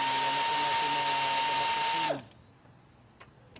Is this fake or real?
real